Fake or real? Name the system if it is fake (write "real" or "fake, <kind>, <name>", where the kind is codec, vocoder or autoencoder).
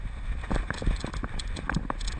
real